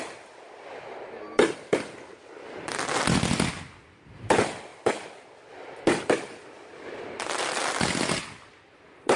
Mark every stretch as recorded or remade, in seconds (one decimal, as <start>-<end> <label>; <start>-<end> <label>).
0.0-9.2 recorded